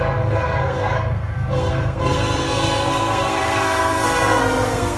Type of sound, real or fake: fake